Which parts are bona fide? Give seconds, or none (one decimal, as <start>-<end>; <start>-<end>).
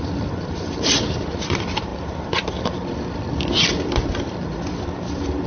none